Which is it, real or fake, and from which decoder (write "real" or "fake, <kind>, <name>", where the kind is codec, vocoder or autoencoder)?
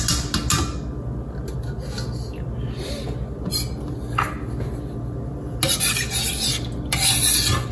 real